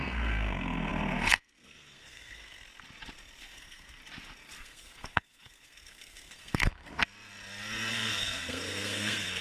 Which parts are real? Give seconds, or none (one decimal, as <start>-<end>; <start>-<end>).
2.6-3.4; 4.0-4.6; 7.0-7.9